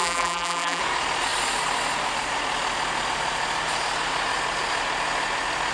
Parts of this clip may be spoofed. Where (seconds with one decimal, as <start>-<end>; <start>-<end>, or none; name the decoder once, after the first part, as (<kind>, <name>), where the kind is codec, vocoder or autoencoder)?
0.0-0.8 (vocoder, BigVGAN v2)